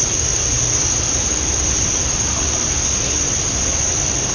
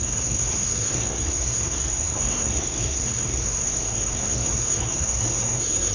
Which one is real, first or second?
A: first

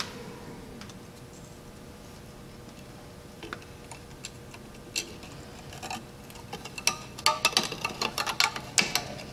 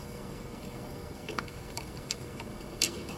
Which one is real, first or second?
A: first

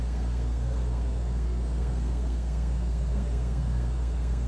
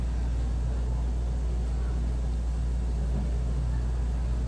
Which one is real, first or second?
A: second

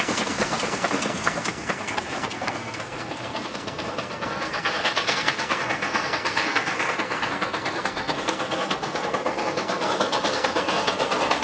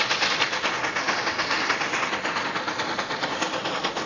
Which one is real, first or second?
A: second